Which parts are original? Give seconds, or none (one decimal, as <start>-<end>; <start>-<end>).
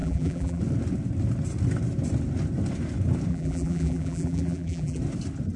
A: 0.6-3.3; 5.0-5.6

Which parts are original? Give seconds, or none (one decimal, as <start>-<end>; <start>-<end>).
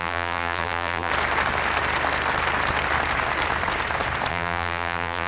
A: 1.1-4.3